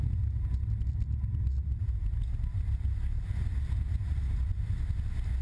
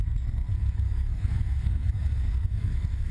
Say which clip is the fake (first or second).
second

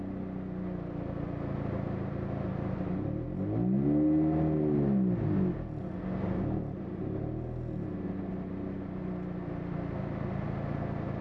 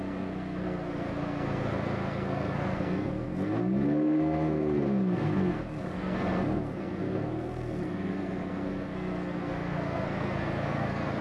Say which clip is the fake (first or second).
second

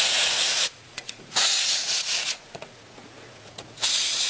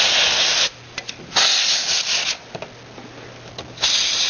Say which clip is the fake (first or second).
first